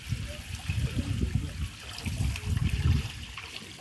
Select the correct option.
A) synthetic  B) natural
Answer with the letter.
B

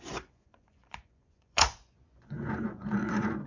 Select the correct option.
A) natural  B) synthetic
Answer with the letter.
B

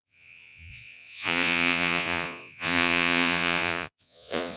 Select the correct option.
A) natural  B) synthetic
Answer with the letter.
B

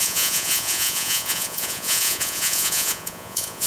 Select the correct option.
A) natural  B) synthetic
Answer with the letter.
B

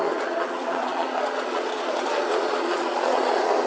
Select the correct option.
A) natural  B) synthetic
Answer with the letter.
B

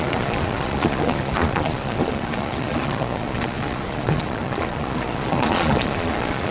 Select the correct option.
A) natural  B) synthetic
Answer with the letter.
B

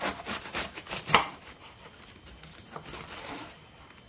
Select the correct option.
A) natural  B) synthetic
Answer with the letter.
A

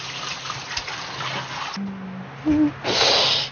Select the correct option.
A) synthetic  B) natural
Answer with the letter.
B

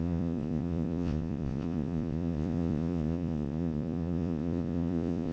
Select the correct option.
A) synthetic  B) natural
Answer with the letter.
A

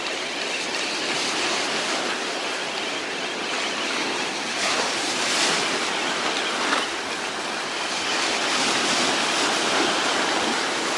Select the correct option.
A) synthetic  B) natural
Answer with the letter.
B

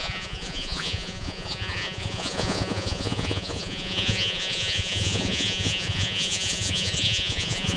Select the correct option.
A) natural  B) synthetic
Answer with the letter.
B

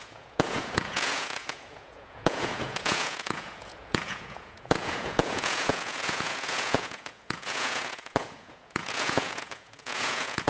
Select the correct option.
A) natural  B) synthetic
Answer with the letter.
B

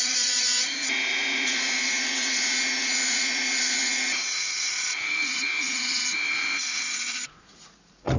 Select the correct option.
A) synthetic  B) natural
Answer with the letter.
A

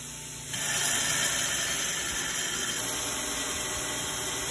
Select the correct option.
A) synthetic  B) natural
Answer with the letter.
B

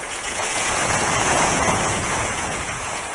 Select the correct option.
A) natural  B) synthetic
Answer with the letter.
B